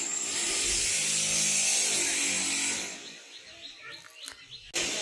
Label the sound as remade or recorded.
recorded